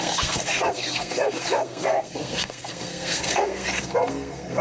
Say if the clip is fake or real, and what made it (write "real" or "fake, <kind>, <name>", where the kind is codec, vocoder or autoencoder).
fake, codec, SNAC